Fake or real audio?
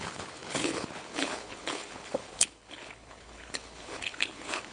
fake